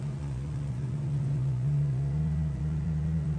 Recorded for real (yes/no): no